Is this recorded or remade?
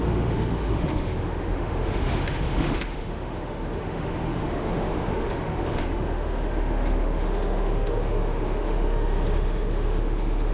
remade